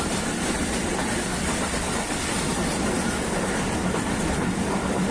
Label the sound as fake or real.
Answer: fake